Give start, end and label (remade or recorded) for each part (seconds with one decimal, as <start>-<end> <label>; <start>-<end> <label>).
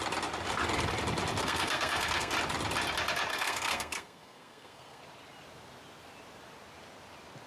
0.0-1.4 recorded; 1.4-2.3 remade; 2.3-3.3 recorded; 3.3-5.0 remade; 5.0-7.5 recorded